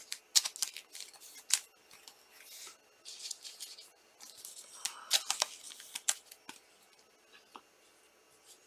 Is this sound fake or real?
real